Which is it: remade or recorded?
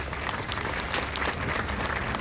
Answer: recorded